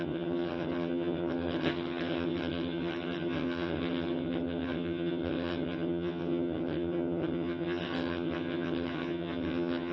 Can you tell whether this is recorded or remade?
remade